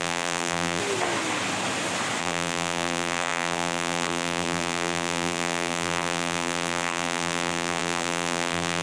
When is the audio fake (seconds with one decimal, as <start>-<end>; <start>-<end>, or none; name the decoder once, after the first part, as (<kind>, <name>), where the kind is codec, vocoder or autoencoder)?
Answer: 0.0-0.8 (vocoder, BigVGAN v2); 2.2-8.8

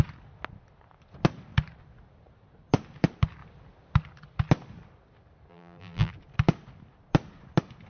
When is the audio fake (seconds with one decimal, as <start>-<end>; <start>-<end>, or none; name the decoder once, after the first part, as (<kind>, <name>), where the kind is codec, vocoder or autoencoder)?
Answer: 5.5-6.1 (vocoder, BigVGAN v2)

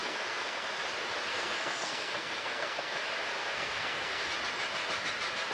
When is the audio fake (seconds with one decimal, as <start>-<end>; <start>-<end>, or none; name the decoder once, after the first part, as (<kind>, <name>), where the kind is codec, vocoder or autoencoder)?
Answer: 0.0-0.7 (codec, SNAC); 1.3-3.0; 3.4-4.3

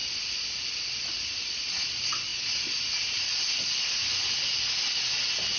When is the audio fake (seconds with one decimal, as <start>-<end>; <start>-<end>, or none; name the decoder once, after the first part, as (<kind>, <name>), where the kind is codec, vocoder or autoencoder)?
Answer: none

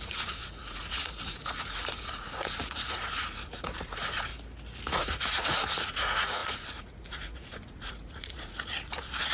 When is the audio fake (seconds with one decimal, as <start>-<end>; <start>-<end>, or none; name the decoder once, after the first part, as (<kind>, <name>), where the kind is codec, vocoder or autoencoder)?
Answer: 0.0-4.3 (vocoder, Vocos); 4.9-9.3

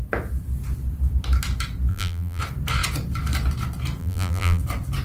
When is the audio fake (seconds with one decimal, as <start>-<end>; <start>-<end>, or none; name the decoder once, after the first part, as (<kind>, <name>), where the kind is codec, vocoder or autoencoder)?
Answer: 1.9-2.4 (vocoder, BigVGAN v2); 4.0-4.6

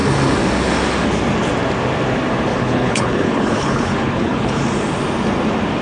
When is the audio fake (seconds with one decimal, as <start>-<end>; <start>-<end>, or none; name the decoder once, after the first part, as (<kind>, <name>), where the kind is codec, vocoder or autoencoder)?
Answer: 2.5-4.6 (codec, HILCodec)

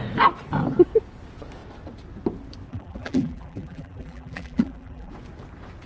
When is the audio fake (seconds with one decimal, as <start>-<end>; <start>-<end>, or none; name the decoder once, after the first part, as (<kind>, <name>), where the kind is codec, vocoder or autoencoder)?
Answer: 2.7-5.1 (vocoder, BigVGAN v2)